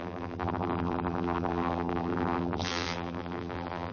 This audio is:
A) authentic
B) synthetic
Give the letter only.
B